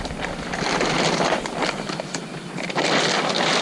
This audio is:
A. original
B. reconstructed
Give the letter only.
A